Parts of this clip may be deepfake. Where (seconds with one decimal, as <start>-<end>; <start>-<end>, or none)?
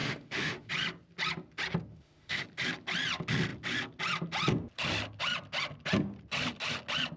0.0-0.7; 1.9-2.4